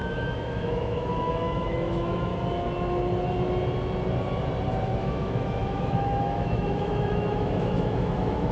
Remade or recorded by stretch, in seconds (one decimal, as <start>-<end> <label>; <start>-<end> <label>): 0.0-2.3 remade; 2.3-5.0 recorded; 5.0-8.5 remade